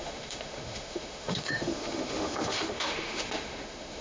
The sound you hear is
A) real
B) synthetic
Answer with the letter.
B